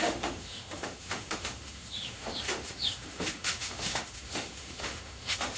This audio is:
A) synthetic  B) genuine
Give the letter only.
A